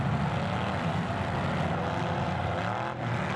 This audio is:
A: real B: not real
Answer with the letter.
A